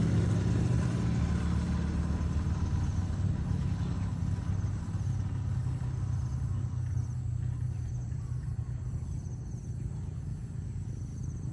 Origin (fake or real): real